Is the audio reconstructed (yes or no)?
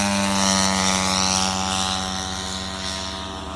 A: no